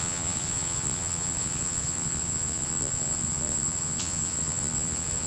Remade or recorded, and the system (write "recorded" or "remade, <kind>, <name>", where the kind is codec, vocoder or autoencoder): remade, vocoder, Vocos